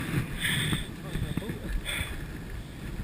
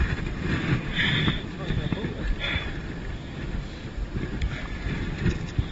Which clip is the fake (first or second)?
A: second